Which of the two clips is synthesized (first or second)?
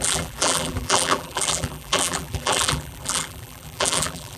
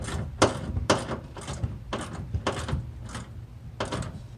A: first